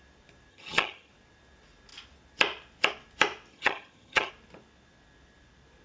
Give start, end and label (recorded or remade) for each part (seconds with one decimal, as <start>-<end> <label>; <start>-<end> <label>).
0.0-0.5 recorded; 0.5-1.1 remade; 1.1-3.5 recorded; 3.5-4.3 remade; 4.3-5.8 recorded

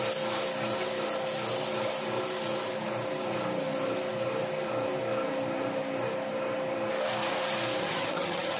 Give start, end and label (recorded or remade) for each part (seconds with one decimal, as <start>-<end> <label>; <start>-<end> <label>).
0.0-7.8 recorded; 7.8-8.6 remade

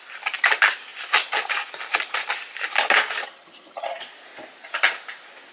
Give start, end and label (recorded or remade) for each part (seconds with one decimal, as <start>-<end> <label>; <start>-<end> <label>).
0.0-3.2 recorded; 3.2-4.0 remade; 4.0-5.5 recorded

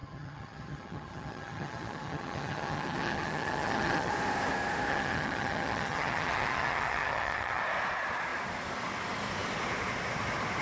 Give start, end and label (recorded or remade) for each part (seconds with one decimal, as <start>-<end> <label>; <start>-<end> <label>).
0.0-4.1 remade; 4.1-4.9 recorded; 4.9-7.6 remade; 7.6-10.6 recorded